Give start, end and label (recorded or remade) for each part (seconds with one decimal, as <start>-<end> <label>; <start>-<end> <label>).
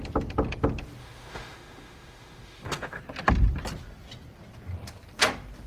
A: 0.0-1.0 recorded; 1.0-3.0 remade; 3.0-5.7 recorded